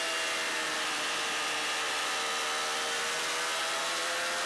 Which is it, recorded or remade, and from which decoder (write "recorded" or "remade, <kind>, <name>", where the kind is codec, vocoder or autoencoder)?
remade, vocoder, BigVGAN v2